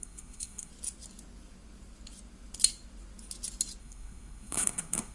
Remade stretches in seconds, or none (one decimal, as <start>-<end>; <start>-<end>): 0.0-0.7; 3.8-5.1